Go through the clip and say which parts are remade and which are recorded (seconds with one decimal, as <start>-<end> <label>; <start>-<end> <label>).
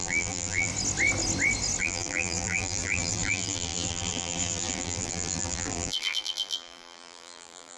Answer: 0.0-0.7 remade; 0.7-1.8 recorded; 1.8-7.8 remade